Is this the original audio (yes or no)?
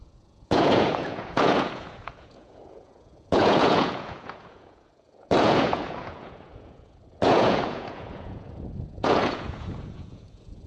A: no